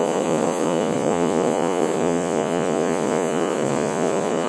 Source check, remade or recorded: remade